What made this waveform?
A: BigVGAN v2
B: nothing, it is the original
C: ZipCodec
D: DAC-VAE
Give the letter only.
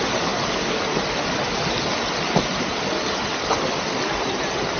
B